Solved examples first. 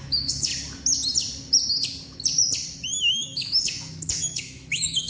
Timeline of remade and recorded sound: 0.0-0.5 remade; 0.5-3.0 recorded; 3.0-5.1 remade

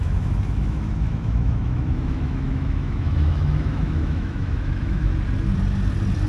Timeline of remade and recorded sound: 0.0-5.1 remade; 5.1-6.3 recorded